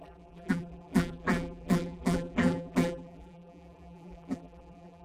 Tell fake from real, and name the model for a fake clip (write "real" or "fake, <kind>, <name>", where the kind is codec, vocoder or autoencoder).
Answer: fake, vocoder, BigVGAN v2